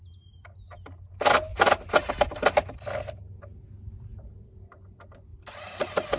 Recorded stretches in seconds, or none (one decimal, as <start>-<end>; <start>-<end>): 0.0-1.5; 2.1-4.1; 4.6-5.3